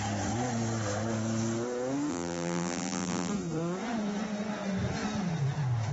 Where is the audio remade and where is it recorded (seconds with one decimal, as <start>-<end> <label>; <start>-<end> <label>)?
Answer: 0.0-2.1 recorded; 2.1-3.3 remade; 3.3-5.9 recorded